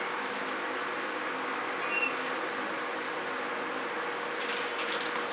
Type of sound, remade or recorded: recorded